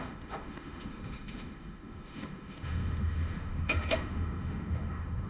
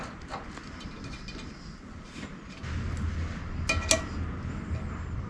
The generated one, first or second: first